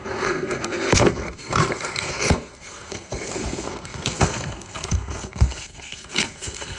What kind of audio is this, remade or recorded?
remade